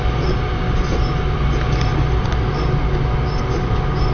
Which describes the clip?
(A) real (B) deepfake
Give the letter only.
A